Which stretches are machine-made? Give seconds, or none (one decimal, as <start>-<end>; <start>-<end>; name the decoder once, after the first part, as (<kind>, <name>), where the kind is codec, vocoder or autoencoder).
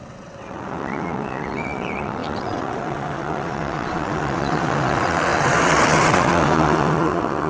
0.0-7.5 (vocoder, WaveNeXt)